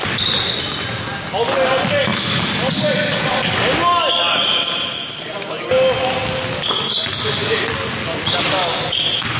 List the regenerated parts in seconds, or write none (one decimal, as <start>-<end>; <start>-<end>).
none